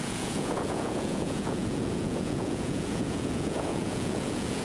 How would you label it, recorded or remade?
remade